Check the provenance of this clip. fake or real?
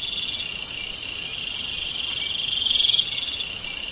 real